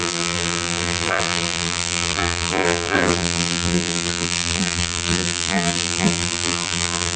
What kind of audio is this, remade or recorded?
remade